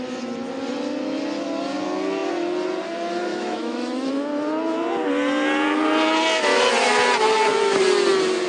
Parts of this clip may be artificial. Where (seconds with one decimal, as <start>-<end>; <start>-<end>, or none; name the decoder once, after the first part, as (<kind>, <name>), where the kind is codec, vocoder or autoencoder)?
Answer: 3.3-4.1 (autoencoder, DAC-VAE)